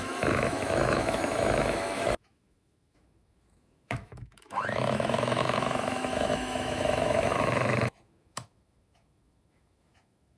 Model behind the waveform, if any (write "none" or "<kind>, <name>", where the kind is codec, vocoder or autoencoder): autoencoder, DAC-VAE